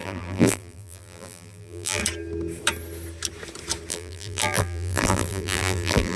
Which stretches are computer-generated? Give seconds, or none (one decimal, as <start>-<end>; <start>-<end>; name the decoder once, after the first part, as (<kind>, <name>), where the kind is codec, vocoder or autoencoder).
0.0-2.0 (vocoder, BigVGAN v2); 3.9-6.2